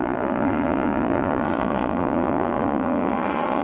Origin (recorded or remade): remade